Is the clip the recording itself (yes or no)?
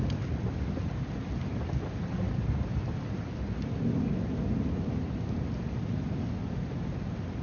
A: yes